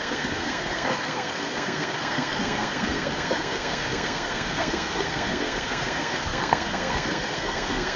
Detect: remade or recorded remade